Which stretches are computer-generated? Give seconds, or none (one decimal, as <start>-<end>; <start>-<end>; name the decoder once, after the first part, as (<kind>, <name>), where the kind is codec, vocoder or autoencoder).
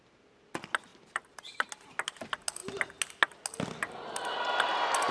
0.9-1.5 (vocoder, BigVGAN v2)